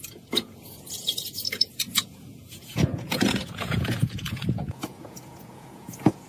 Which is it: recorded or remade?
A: remade